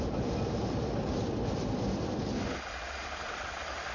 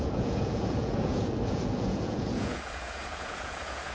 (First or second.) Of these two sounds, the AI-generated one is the second